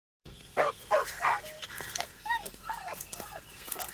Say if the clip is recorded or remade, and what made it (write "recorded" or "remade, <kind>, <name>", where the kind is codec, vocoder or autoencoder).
remade, codec, SNAC